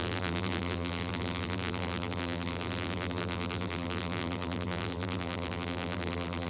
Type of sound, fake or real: fake